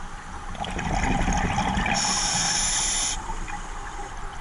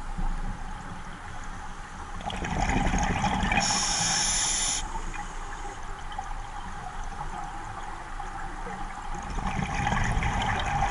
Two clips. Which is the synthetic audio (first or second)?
first